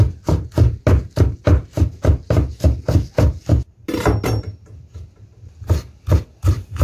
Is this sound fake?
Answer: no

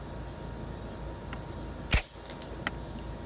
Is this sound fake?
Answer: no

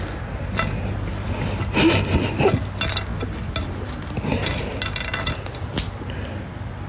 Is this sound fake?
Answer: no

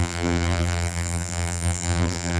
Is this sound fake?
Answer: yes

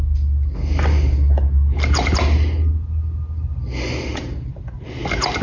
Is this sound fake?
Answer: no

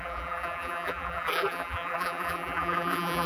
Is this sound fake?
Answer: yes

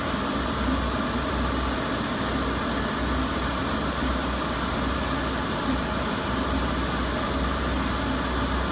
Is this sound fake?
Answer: no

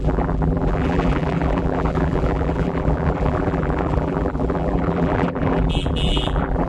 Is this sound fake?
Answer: yes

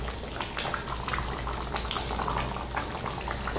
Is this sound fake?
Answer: no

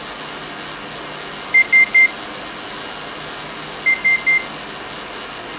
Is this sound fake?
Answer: no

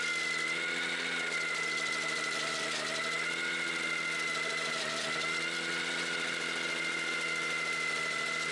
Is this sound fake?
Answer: no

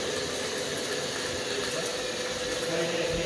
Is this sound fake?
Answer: no